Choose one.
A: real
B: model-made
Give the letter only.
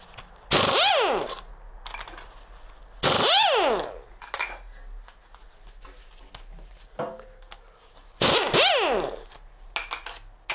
A